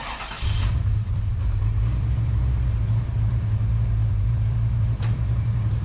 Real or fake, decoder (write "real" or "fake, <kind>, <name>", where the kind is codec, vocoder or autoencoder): fake, vocoder, BigVGAN v2